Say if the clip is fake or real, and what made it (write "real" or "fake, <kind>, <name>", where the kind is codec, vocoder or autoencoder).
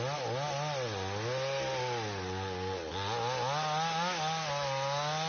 real